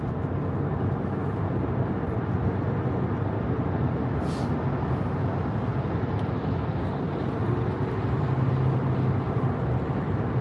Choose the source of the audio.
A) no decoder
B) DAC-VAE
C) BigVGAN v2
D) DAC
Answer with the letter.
A